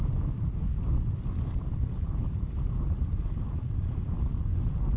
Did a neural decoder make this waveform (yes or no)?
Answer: no